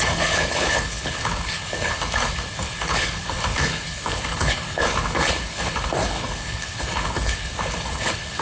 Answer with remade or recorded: remade